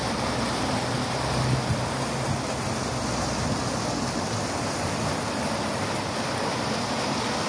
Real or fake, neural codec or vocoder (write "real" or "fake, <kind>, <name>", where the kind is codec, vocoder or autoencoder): real